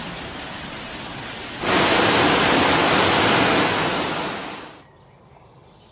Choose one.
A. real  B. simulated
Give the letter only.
A